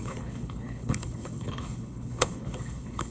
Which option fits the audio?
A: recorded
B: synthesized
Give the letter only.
B